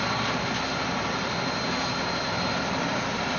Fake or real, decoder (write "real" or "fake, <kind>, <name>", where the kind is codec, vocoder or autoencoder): real